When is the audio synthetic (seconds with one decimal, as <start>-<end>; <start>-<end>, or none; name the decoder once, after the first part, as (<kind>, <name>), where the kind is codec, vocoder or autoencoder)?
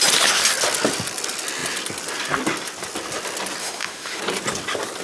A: 3.6-4.2 (autoencoder, DAC-VAE)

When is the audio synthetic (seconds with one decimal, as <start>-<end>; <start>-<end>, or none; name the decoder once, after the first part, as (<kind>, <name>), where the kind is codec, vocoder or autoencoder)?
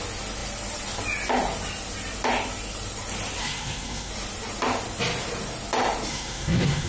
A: 3.4-4.1 (codec, SNAC); 6.1-6.9